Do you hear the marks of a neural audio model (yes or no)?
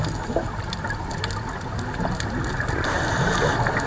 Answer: no